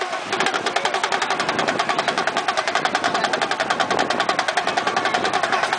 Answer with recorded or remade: recorded